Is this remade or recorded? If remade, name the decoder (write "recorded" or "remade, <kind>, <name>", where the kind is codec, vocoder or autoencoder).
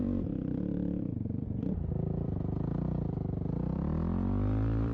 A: remade, vocoder, BigVGAN v2